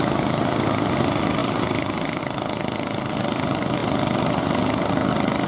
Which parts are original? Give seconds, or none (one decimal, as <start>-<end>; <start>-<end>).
0.0-1.4; 2.2-5.5